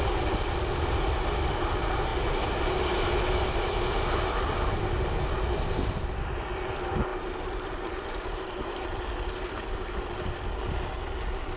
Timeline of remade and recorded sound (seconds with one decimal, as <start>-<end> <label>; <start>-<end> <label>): 0.0-7.1 recorded; 7.1-9.0 remade; 9.0-11.6 recorded